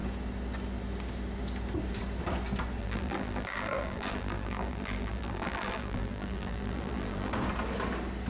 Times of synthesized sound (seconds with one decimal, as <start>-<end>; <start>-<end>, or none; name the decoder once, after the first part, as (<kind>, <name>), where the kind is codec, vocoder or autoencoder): 2.8-7.3 (vocoder, BigVGAN v2)